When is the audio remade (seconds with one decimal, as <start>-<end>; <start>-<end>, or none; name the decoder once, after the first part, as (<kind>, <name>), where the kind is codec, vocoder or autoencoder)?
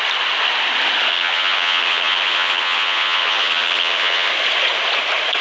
1.1-4.3 (vocoder, HiFi-GAN)